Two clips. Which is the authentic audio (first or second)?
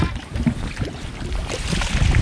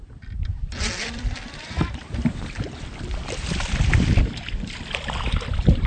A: first